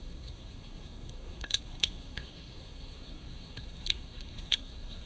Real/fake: fake